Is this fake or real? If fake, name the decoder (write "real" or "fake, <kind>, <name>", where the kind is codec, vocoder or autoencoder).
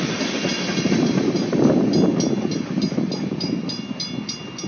real